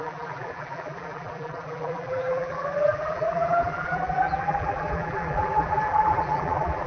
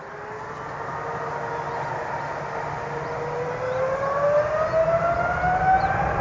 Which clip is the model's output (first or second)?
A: first